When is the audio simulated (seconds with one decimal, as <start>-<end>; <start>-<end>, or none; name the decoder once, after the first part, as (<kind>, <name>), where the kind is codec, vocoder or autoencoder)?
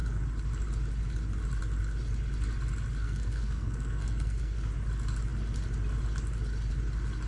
3.0-4.7 (codec, SNAC)